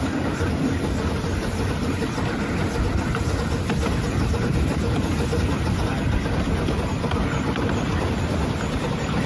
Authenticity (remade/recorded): recorded